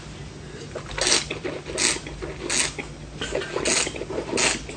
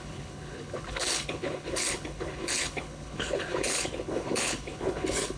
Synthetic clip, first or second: second